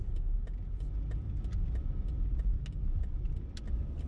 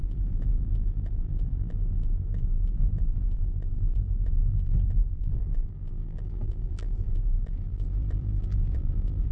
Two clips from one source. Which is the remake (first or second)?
second